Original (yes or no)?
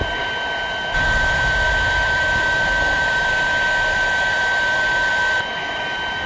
no